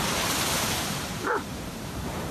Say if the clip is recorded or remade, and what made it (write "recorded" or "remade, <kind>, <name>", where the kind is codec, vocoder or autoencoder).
remade, vocoder, BigVGAN v2